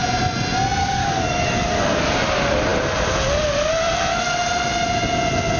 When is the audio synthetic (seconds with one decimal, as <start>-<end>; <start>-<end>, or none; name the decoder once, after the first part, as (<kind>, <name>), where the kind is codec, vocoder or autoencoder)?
0.8-1.8 (codec, DAC)